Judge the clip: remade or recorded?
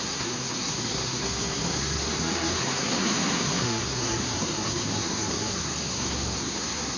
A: remade